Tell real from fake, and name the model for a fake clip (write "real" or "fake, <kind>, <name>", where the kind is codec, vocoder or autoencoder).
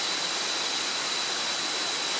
real